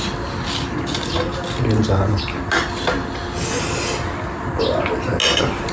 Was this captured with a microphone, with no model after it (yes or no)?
yes